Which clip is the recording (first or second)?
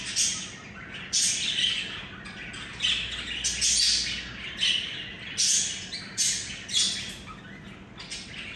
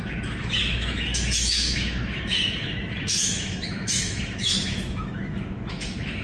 first